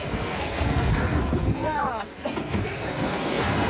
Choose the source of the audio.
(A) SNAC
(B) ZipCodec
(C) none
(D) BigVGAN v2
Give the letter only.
A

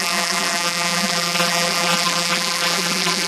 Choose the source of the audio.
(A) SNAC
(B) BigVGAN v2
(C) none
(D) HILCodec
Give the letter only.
B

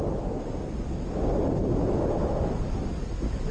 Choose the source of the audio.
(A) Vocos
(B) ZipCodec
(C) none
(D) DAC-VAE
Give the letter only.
C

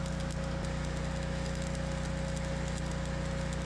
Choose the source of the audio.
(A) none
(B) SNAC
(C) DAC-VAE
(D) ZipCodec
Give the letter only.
A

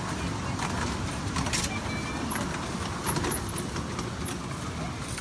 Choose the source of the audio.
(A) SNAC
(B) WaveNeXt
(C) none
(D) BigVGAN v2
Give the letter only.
C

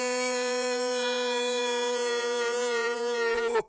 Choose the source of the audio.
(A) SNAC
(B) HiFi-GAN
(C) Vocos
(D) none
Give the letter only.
C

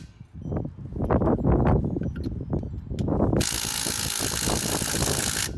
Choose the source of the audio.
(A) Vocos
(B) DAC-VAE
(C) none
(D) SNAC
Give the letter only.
C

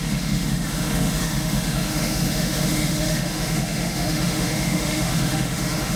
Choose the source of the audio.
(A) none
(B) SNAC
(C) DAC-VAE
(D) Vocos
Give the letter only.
C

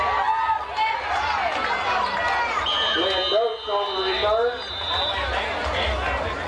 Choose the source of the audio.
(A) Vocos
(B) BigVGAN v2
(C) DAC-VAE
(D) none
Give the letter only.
D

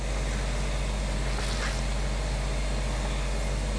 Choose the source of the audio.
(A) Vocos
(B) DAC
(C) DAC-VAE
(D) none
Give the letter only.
D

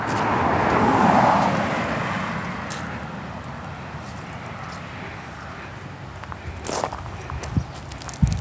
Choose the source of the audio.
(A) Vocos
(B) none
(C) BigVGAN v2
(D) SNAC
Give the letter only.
B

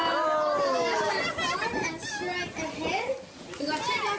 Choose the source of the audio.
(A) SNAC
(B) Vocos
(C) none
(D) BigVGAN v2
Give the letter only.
C